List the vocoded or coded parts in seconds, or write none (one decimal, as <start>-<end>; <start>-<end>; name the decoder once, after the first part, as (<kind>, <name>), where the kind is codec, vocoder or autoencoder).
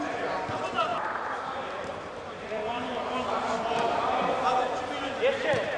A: 0.9-3.6 (vocoder, BigVGAN v2)